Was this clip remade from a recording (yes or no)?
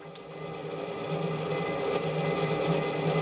no